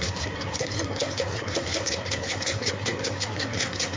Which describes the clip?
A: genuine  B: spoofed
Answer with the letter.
B